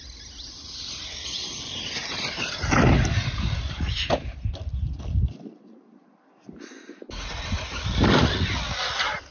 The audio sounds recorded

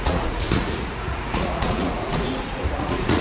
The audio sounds remade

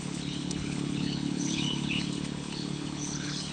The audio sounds remade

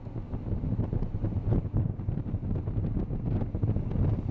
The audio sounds recorded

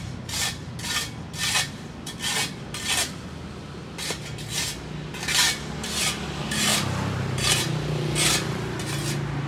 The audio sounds recorded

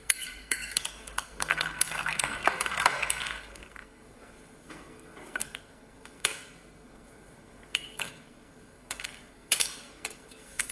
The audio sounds remade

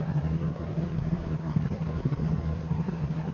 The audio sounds remade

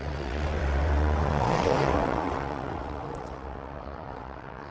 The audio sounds remade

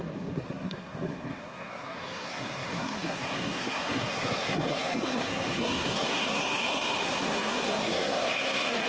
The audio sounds remade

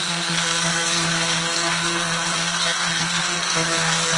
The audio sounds remade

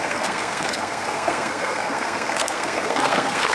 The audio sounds remade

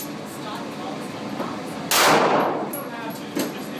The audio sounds recorded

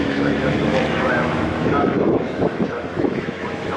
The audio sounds remade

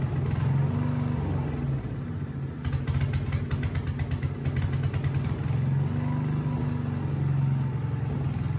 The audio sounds recorded